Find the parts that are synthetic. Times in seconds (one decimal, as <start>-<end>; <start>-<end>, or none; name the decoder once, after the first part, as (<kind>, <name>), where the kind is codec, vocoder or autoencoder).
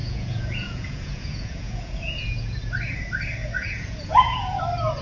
0.0-2.6 (vocoder, Vocos); 3.4-4.6